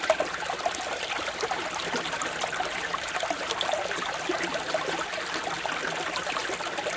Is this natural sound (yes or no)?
yes